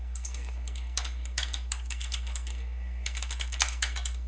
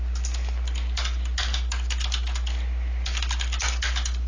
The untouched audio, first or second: second